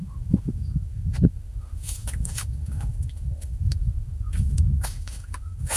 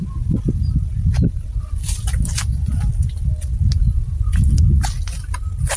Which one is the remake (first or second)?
first